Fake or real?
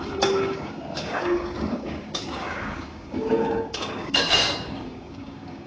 fake